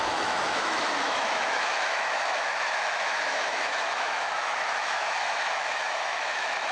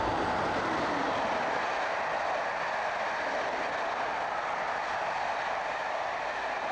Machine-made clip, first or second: first